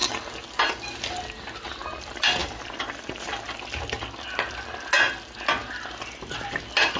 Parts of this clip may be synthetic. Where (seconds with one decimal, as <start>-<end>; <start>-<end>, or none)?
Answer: 2.4-3.1; 5.6-6.5